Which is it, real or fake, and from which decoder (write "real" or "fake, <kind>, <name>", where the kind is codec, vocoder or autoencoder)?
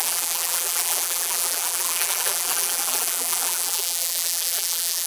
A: fake, vocoder, BigVGAN v2